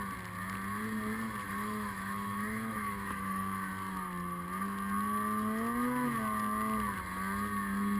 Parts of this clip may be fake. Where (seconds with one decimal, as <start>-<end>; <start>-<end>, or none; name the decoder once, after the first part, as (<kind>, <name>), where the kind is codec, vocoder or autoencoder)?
1.4-3.7 (autoencoder, DAC-VAE)